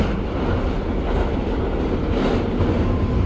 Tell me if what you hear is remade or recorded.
recorded